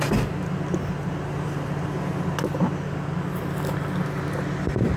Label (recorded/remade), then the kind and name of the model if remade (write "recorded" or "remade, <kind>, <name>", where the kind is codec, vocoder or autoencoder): recorded